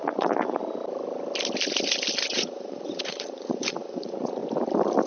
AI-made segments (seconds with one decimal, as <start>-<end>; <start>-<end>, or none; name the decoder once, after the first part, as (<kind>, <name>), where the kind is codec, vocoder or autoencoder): 0.0-0.6 (vocoder, Vocos); 2.3-4.4

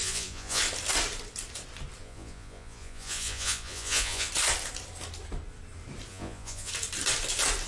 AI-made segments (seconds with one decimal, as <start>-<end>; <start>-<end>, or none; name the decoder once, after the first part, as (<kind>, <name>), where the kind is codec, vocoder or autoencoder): 0.0-0.6 (vocoder, Vocos); 2.0-4.3; 6.1-6.7